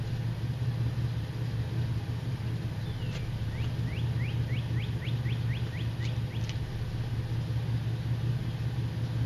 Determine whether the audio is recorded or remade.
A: recorded